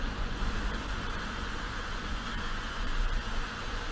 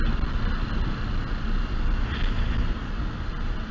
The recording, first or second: second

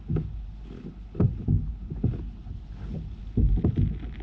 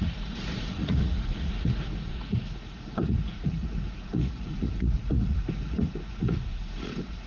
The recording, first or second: first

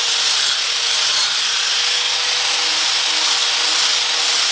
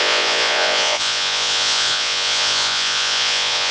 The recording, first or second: first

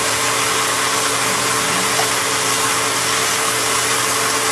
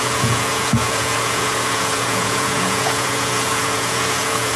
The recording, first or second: first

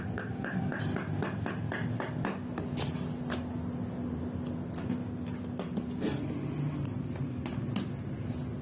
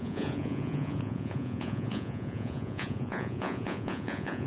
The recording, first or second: first